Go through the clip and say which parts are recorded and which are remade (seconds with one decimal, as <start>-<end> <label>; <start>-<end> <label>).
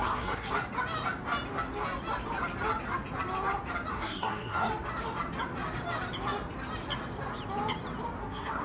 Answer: 0.0-0.5 remade; 0.5-3.9 recorded; 3.9-4.7 remade; 4.7-8.2 recorded; 8.2-8.6 remade